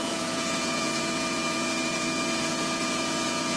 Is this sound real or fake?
fake